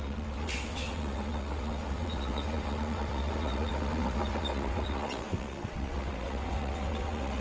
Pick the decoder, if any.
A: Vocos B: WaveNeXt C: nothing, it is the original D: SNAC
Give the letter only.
B